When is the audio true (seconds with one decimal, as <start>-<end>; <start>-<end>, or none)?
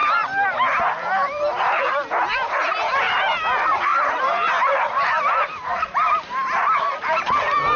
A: 0.0-2.6